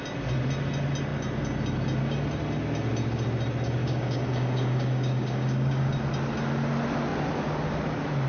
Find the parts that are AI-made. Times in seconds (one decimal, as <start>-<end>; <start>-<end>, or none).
3.8-5.9